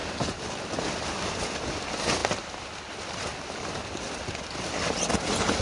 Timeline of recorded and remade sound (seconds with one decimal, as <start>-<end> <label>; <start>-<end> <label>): 0.0-5.6 recorded